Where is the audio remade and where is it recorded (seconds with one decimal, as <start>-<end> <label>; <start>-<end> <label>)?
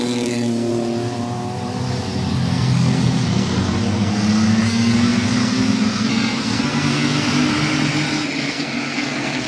0.0-0.7 remade; 0.7-2.5 recorded; 2.5-7.5 remade; 7.5-8.4 recorded; 8.4-9.5 remade